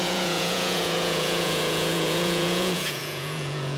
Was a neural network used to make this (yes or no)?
yes